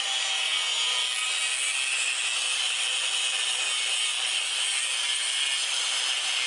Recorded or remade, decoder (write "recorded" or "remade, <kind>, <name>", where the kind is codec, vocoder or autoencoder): recorded